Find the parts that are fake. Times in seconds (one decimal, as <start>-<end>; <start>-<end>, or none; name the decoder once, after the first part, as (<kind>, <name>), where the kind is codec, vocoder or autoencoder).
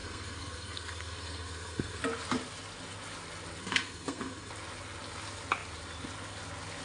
0.0-2.0 (codec, SNAC); 3.6-4.5